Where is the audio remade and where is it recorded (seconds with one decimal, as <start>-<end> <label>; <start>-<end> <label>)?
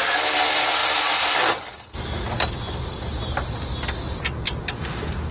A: 0.0-5.3 recorded